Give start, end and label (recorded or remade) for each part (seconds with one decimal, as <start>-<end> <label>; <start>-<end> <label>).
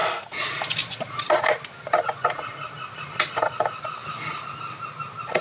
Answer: 0.0-5.4 recorded